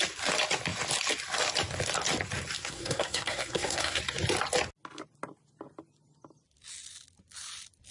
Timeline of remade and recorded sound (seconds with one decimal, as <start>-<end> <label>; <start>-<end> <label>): 0.0-2.6 recorded; 2.6-4.0 remade; 4.0-7.9 recorded